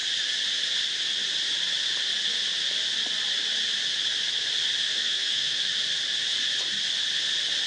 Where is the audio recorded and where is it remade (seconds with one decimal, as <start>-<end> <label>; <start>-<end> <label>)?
0.0-4.8 recorded; 4.8-5.8 remade; 5.8-7.7 recorded